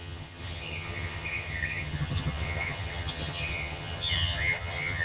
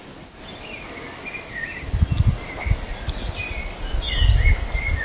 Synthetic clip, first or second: first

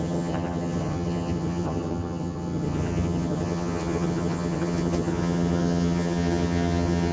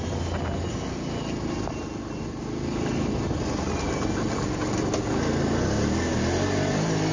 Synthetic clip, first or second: first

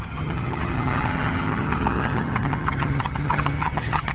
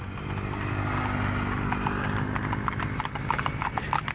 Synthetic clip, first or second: first